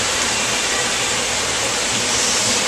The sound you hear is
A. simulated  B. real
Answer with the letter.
A